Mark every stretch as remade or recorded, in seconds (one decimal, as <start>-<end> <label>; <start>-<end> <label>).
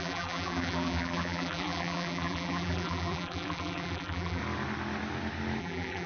0.0-4.4 remade; 4.4-5.6 recorded; 5.6-6.1 remade